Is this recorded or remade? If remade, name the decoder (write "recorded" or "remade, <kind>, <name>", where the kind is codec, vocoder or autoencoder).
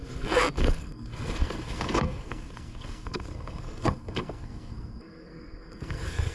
remade, codec, SNAC